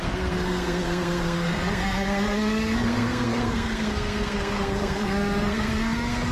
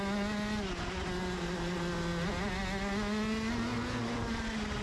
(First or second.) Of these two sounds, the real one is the second